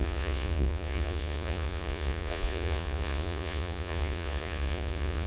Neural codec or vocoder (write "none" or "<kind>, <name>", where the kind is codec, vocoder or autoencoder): vocoder, Vocos